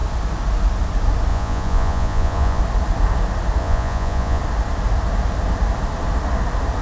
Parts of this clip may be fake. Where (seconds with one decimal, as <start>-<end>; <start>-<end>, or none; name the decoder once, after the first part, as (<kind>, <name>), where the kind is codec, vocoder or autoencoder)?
1.3-2.6 (vocoder, Vocos); 3.6-4.4